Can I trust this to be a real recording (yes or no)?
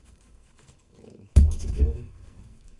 no